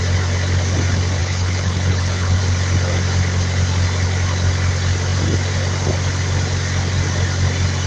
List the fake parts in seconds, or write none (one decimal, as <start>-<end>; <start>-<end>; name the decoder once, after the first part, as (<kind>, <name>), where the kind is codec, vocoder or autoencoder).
1.2-2.4 (codec, HILCodec)